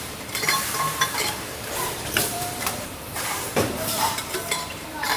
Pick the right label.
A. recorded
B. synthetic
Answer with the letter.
B